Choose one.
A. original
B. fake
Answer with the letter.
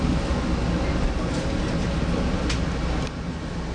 A